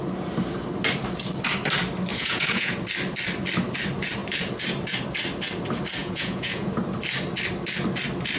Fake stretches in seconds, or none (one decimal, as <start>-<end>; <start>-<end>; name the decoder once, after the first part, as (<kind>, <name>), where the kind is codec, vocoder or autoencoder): 2.1-2.7 (vocoder, Vocos); 6.0-6.7

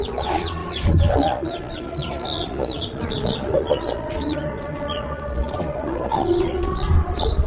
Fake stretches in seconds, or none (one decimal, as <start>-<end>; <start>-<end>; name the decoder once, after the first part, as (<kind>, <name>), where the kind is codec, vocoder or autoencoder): 0.0-7.5 (vocoder, Vocos)

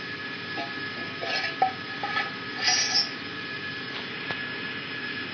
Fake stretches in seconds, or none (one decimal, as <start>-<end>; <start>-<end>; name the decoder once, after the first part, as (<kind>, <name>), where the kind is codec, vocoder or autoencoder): none

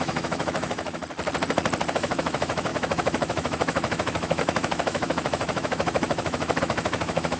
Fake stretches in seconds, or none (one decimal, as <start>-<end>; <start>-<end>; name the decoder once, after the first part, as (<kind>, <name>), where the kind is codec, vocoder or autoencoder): 0.0-1.0 (autoencoder, DAC-VAE); 1.9-7.4

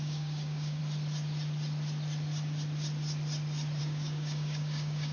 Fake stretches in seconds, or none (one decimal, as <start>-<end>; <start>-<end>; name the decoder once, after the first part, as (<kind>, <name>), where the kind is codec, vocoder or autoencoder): 0.0-0.8 (codec, DAC); 3.8-5.1

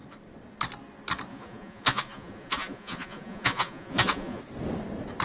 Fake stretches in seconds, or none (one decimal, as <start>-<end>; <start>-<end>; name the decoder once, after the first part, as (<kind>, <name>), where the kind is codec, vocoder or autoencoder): 1.3-4.4 (vocoder, Vocos)